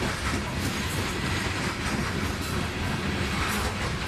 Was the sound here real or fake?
real